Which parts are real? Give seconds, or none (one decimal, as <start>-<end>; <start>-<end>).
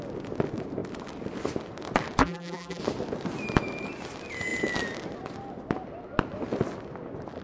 0.0-2.2; 2.8-7.4